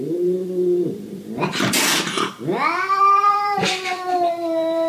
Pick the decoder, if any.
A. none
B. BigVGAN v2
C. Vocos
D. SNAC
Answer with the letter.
B